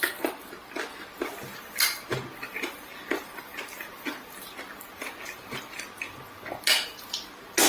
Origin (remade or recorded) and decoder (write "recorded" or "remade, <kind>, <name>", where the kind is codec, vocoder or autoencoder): recorded